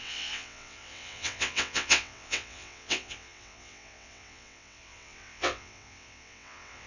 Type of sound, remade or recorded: remade